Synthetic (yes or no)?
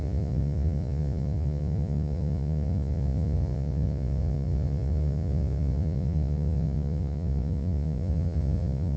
yes